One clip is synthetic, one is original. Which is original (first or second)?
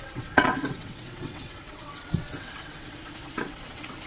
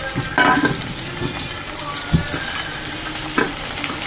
second